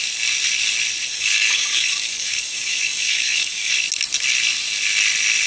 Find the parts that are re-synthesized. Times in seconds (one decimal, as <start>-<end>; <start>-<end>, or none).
1.1-3.7

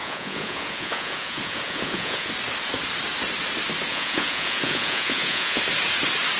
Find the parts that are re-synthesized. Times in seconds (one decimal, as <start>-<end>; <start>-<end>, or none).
0.0-2.3; 3.9-5.6